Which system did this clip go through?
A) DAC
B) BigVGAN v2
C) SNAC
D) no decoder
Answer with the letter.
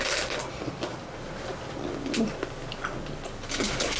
D